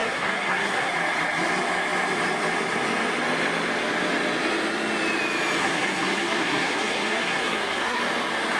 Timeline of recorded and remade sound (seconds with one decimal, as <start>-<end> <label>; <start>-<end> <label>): 0.0-0.9 remade; 0.9-5.6 recorded; 5.6-8.0 remade; 8.0-8.6 recorded

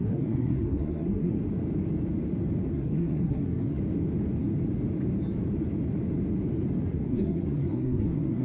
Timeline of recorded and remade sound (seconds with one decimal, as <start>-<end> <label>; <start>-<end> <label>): 0.0-1.4 remade; 1.4-2.7 recorded; 2.7-3.8 remade; 3.8-6.9 recorded; 6.9-8.4 remade

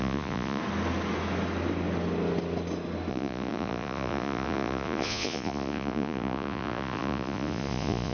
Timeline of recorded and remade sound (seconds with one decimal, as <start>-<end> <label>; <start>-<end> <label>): 0.0-0.6 remade; 0.6-3.1 recorded; 3.1-8.1 remade

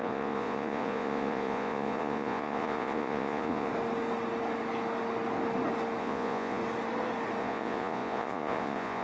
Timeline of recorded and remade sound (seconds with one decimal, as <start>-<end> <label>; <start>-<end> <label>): 0.0-3.7 remade; 3.7-6.0 recorded; 6.0-6.6 remade; 6.6-7.4 recorded; 7.4-9.0 remade